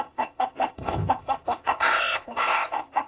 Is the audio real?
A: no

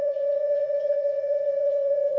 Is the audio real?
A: no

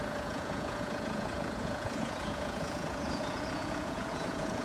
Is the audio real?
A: no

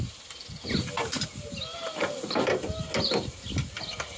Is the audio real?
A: yes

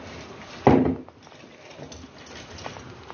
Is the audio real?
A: yes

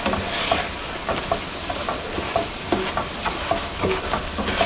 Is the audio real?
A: yes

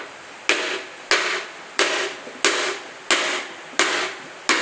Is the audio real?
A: yes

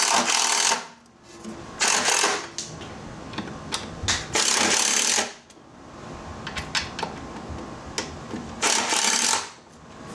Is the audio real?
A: yes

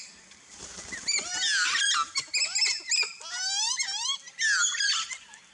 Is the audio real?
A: yes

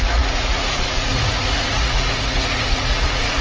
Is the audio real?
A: no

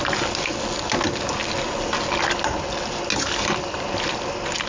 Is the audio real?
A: yes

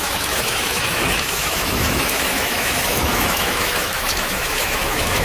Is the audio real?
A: no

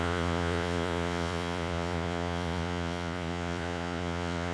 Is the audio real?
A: no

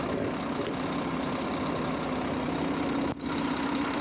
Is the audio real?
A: no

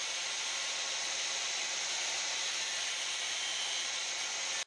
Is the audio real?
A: yes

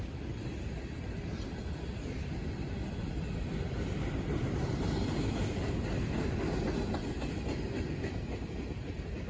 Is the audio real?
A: yes